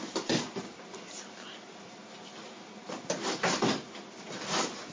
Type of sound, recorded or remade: recorded